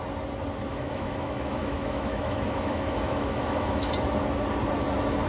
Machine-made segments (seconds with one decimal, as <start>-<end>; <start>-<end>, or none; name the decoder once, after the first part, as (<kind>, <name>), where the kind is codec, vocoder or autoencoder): 0.7-3.9 (autoencoder, DAC-VAE)